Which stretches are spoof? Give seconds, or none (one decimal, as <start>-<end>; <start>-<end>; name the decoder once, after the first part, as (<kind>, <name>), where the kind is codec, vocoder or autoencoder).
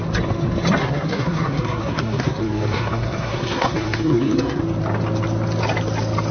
0.8-4.6 (codec, SNAC)